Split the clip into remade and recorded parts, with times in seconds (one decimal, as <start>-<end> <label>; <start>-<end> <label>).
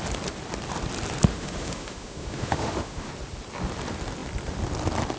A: 0.0-1.3 recorded; 1.3-3.1 remade; 3.1-5.2 recorded